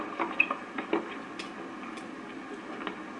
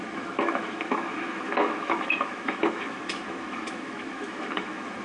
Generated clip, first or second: second